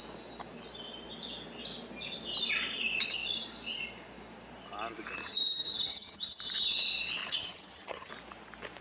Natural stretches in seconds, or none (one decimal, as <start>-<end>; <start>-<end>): 0.0-5.2; 6.4-7.2; 8.1-8.8